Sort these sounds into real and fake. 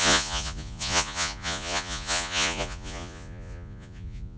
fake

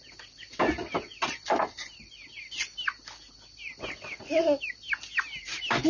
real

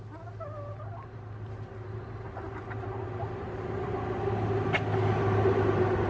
real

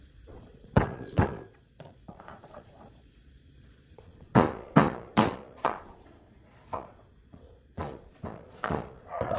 fake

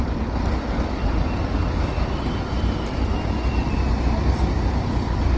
real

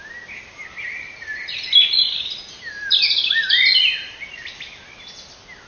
real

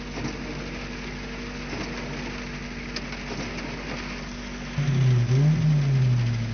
real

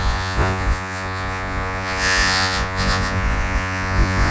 fake